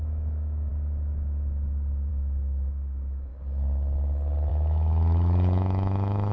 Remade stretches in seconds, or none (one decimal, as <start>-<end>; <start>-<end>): 0.0-0.7; 2.1-3.3; 4.5-6.3